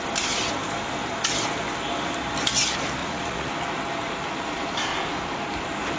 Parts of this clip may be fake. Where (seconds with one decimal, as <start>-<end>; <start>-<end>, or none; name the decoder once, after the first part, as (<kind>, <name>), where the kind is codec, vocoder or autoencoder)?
3.0-3.5 (vocoder, Vocos)